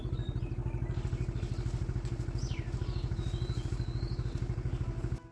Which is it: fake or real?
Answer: real